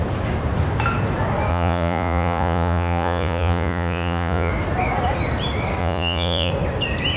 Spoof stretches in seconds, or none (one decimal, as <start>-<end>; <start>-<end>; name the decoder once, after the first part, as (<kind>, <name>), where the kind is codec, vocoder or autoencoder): 1.5-4.5 (vocoder, Vocos); 5.8-6.5